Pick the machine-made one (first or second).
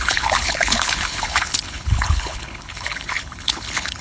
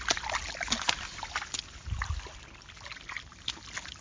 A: first